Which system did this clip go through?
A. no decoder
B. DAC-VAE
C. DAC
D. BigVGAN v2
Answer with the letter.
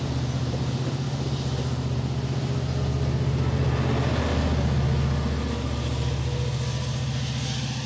A